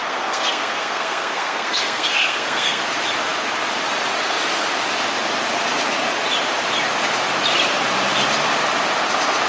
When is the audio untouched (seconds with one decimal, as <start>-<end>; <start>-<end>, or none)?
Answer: 2.8-9.5